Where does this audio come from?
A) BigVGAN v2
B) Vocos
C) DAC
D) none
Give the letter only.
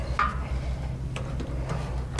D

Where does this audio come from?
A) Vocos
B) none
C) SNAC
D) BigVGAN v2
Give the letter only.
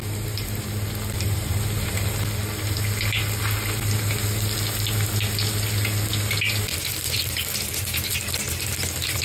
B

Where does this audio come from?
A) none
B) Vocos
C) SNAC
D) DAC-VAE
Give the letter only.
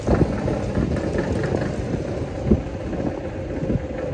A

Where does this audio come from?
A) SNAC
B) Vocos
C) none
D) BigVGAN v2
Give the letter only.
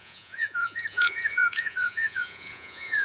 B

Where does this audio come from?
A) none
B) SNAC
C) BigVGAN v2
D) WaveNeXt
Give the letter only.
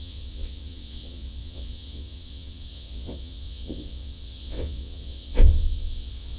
D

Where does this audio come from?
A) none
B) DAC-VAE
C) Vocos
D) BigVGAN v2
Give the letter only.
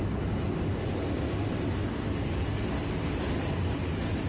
A